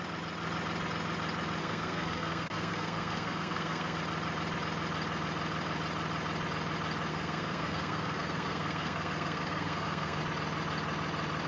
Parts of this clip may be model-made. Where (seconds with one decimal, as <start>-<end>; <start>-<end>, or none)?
1.6-4.0; 7.1-10.2